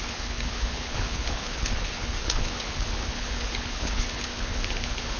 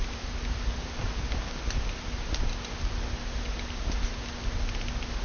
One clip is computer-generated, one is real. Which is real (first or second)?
second